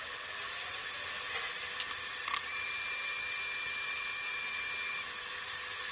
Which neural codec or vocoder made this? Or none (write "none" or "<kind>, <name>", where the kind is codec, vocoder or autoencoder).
none